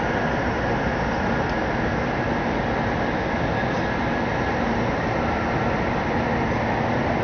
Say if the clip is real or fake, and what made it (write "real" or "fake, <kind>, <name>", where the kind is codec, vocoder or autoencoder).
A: real